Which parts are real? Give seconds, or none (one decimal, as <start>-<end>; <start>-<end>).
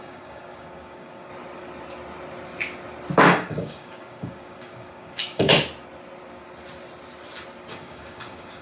1.3-3.2; 5.5-7.7